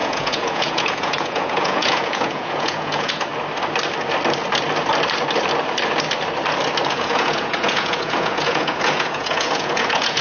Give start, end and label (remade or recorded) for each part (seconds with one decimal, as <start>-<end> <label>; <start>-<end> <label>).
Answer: 0.0-3.3 remade; 3.3-6.9 recorded; 6.9-10.2 remade